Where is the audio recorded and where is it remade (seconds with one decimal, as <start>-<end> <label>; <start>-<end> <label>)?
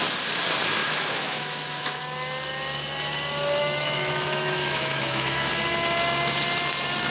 0.0-0.8 recorded; 0.8-2.0 remade; 2.0-3.6 recorded; 3.6-5.5 remade; 5.5-7.1 recorded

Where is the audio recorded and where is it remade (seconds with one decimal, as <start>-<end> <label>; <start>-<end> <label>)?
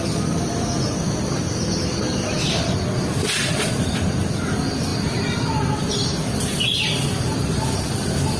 0.0-8.4 recorded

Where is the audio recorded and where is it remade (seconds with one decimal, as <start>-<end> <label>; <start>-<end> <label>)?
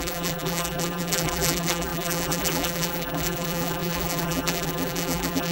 0.0-5.5 remade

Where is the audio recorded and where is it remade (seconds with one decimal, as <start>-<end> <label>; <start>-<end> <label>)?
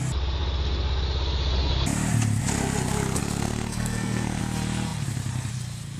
0.0-3.2 recorded; 3.2-4.4 remade; 4.4-6.0 recorded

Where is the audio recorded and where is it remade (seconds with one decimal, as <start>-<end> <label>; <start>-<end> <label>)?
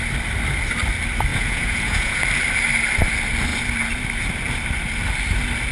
0.0-1.3 recorded; 1.3-2.2 remade; 2.2-5.7 recorded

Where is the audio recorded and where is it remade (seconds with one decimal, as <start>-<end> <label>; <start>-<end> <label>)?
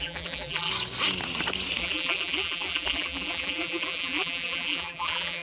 0.0-0.7 remade; 0.7-1.8 recorded; 1.8-5.4 remade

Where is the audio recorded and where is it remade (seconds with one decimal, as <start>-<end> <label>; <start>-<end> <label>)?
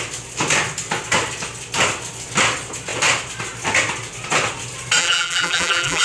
0.0-5.0 recorded; 5.0-6.0 remade